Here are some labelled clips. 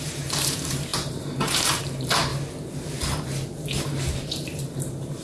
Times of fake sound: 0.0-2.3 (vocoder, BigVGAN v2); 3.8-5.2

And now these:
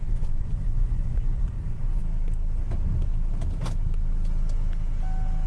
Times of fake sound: 0.0-2.0 (vocoder, Vocos)

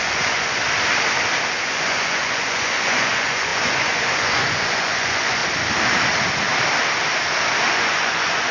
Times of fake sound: 0.0-0.6 (vocoder, Vocos); 1.6-5.4; 7.7-8.5

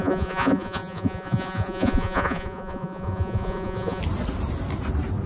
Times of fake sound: 0.0-4.0 (vocoder, Vocos)

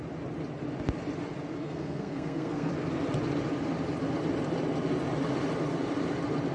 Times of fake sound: 1.6-2.7 (codec, SNAC)

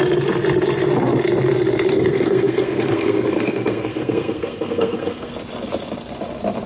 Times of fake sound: 1.9-5.3 (codec, SNAC)

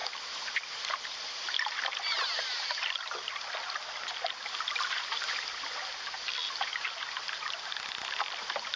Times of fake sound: none

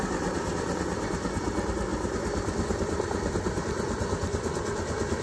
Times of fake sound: none